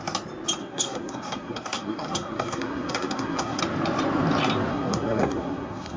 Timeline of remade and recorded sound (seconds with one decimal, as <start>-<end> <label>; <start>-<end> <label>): 0.0-0.6 recorded; 0.6-3.6 remade; 3.6-4.7 recorded; 4.7-6.0 remade